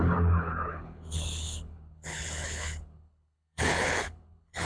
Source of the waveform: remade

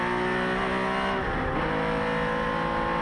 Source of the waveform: recorded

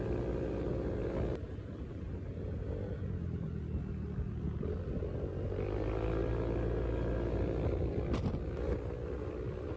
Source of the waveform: recorded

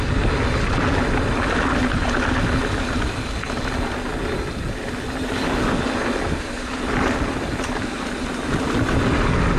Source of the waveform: recorded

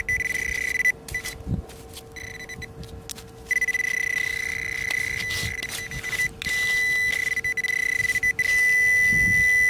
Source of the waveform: recorded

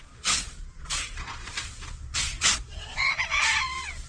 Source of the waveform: remade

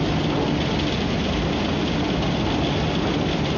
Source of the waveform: recorded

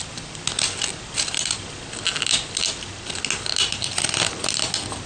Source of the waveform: recorded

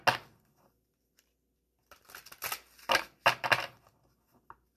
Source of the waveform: recorded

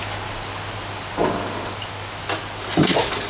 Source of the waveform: recorded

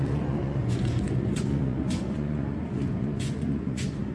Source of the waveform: remade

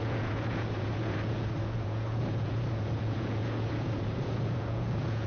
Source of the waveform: remade